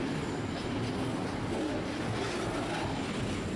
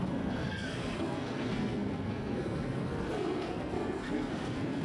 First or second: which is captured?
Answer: first